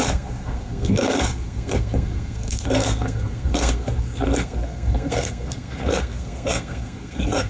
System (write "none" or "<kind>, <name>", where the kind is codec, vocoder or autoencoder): codec, SNAC